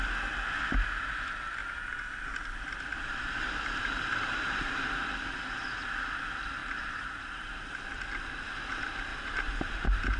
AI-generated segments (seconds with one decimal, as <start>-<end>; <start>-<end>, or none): 1.6-2.1; 2.9-4.8; 6.6-7.1; 9.1-9.6